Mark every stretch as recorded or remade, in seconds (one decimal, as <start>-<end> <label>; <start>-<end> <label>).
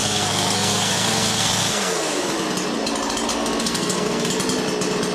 0.0-2.3 remade; 2.3-3.3 recorded; 3.3-4.3 remade; 4.3-5.1 recorded